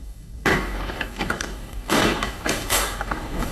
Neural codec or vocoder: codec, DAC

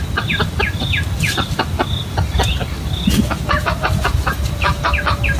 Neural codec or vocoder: none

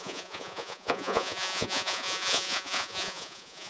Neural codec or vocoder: vocoder, Vocos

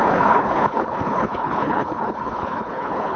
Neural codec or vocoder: codec, HILCodec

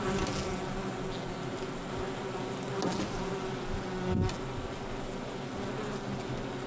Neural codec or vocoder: none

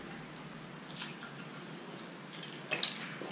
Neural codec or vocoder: none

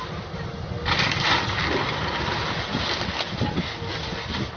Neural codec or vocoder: none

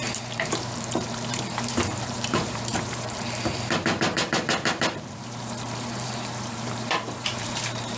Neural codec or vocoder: vocoder, BigVGAN v2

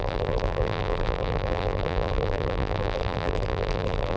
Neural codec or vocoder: vocoder, BigVGAN v2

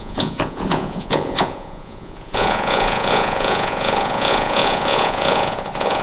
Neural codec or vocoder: vocoder, Vocos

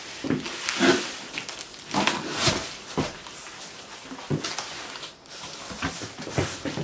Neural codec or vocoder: none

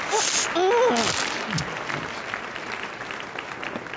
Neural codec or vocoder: none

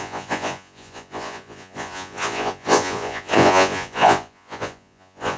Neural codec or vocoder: vocoder, Vocos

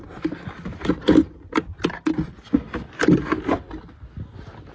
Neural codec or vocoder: none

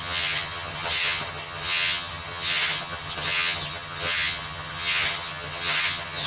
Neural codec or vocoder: vocoder, HiFi-GAN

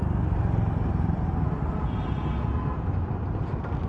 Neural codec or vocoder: none